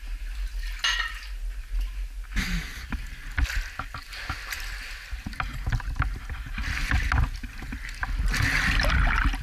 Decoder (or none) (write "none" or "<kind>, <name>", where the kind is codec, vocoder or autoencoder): none